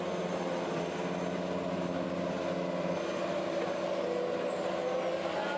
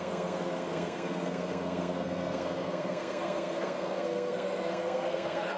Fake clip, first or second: second